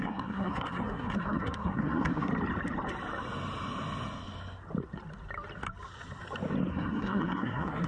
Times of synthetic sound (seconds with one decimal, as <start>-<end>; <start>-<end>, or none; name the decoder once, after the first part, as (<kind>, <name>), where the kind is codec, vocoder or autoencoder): 0.0-2.3 (codec, SNAC); 6.7-7.9